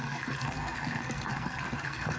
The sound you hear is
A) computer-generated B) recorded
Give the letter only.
A